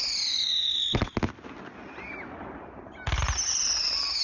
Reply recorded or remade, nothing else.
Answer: recorded